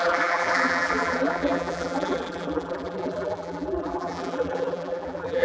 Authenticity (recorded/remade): remade